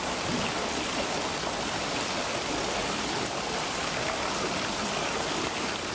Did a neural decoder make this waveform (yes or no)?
no